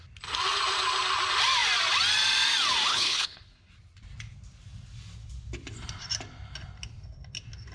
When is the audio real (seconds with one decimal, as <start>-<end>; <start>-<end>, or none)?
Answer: 0.0-2.9; 3.7-7.7